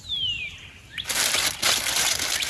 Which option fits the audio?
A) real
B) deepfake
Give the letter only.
A